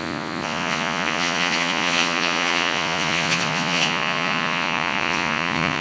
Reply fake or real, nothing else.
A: fake